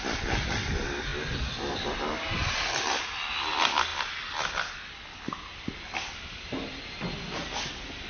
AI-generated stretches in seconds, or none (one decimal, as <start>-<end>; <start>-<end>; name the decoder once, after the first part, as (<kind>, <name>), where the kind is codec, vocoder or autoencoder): none